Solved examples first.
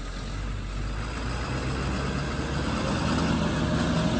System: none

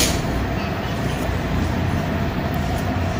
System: vocoder, BigVGAN v2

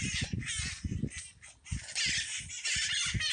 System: none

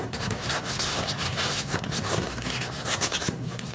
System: codec, SNAC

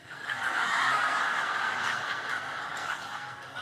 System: codec, SNAC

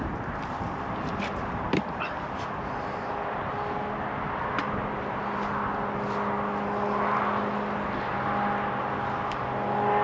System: none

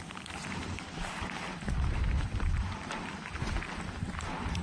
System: vocoder, BigVGAN v2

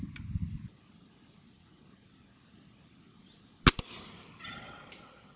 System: none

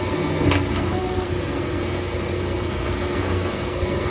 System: codec, SNAC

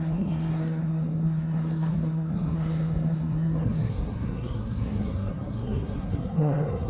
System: codec, SNAC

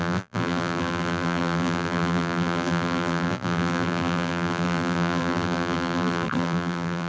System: vocoder, BigVGAN v2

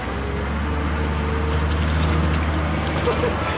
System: none